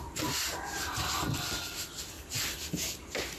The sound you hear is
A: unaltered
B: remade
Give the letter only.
A